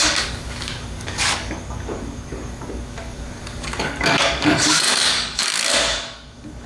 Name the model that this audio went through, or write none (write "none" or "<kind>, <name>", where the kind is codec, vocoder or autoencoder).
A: codec, DAC